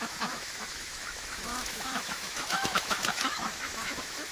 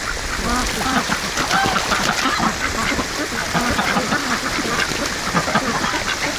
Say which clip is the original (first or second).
second